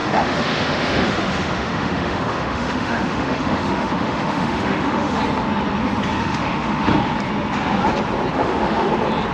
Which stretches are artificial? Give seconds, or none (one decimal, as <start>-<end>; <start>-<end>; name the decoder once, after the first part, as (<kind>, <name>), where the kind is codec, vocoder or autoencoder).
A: 0.0-5.2 (autoencoder, DAC-VAE); 6.2-6.9; 8.3-8.9